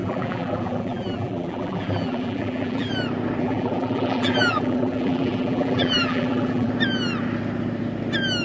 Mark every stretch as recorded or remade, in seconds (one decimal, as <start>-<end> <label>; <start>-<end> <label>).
0.0-2.9 remade; 2.9-3.4 recorded; 3.4-6.7 remade; 6.7-8.4 recorded